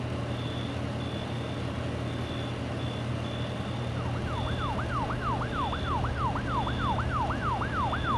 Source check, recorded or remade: recorded